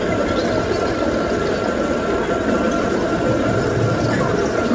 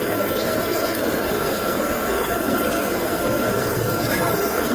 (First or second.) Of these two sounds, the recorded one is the first